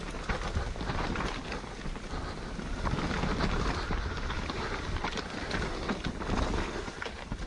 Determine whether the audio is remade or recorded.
recorded